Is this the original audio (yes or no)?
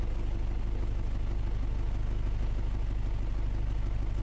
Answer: yes